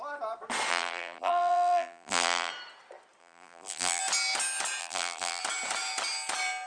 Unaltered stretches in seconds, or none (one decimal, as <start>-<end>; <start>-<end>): 0.0-0.7; 2.5-3.2; 4.0-4.8; 5.4-6.7